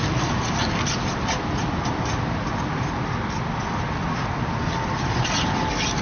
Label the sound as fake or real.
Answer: real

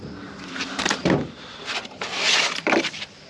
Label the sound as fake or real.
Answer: fake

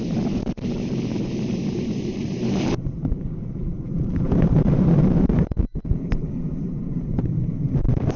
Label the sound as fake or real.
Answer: fake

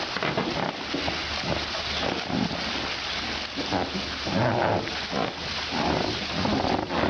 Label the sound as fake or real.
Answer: real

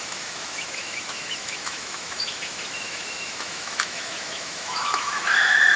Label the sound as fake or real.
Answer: fake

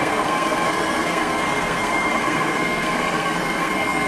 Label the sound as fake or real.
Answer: fake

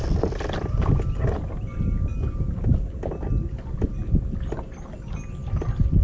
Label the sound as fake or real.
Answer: real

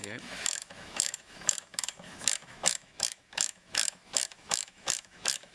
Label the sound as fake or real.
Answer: fake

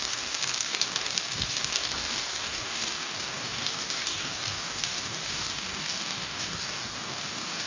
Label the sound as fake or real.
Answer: fake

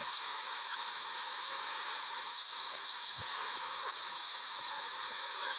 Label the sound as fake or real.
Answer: fake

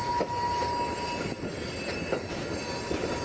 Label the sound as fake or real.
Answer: real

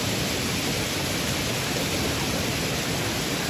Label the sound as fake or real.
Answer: real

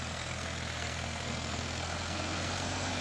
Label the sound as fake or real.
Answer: fake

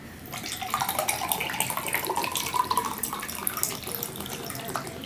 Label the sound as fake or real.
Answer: real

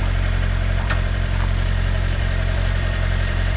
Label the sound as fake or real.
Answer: fake